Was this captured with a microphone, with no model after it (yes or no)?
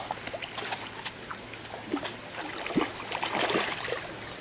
yes